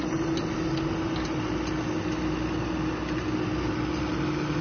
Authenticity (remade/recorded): recorded